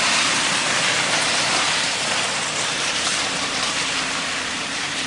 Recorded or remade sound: remade